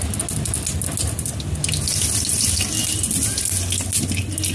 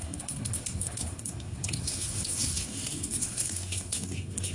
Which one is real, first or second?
first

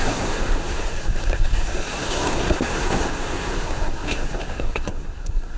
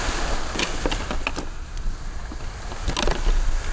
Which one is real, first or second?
second